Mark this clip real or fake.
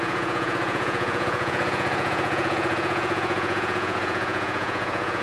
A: fake